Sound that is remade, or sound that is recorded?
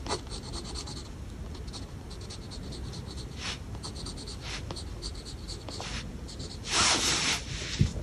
recorded